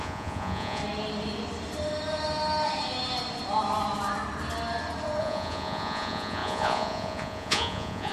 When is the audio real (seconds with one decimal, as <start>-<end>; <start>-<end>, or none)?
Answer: 0.8-5.2